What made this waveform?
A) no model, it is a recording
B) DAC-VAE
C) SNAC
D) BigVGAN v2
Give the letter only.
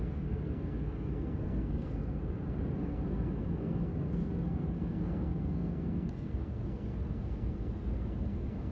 C